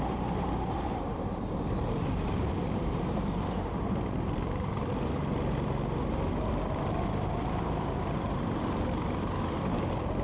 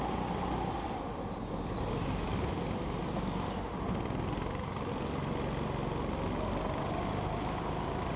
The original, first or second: second